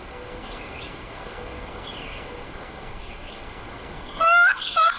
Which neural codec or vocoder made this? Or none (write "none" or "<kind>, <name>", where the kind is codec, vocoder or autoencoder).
codec, SNAC